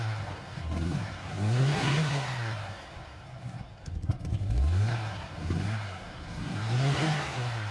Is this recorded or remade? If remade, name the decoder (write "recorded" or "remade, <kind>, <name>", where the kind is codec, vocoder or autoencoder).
remade, codec, SNAC